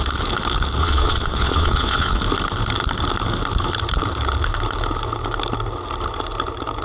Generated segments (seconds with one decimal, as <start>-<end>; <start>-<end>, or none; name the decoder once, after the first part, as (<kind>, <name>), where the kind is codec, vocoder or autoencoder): 0.8-2.2 (vocoder, Vocos)